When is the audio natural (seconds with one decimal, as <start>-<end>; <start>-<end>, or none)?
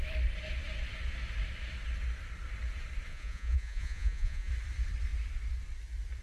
0.0-3.1; 4.5-6.2